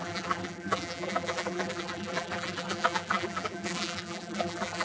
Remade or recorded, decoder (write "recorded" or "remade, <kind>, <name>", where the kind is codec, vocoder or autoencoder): remade, vocoder, BigVGAN v2